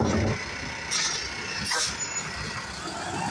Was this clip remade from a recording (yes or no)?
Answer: no